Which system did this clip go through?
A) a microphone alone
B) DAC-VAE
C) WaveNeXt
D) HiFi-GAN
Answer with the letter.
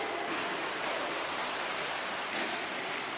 A